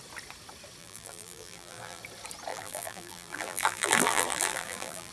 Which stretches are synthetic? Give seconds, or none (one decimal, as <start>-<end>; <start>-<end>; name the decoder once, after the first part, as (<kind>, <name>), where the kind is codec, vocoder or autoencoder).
0.8-2.0 (vocoder, BigVGAN v2); 2.5-5.1

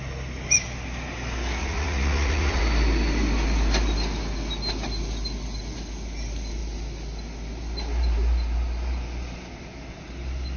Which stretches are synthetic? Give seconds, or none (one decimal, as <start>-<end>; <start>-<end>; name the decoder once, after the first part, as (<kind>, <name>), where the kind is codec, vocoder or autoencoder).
1.6-2.6 (vocoder, Vocos)